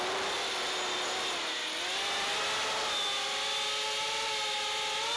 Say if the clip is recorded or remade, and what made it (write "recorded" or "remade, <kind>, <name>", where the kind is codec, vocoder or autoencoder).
recorded